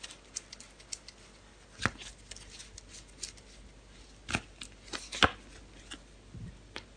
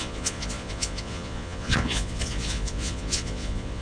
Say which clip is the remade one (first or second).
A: second